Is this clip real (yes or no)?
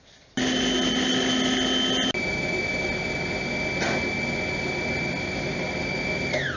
yes